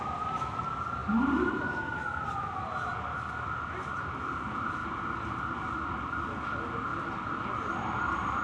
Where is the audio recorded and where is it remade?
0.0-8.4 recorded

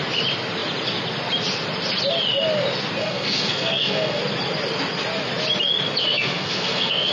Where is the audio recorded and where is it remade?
0.0-3.0 recorded; 3.0-4.2 remade; 4.2-6.0 recorded; 6.0-7.1 remade

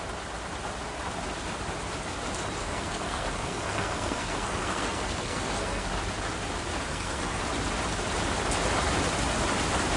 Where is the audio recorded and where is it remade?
0.0-2.6 recorded; 2.6-5.9 remade; 5.9-6.9 recorded; 6.9-7.4 remade; 7.4-10.0 recorded